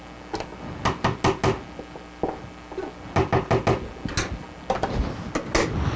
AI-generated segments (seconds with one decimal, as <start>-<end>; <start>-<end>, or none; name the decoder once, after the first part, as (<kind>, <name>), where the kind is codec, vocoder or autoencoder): none